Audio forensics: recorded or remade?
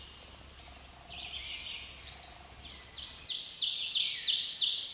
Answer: recorded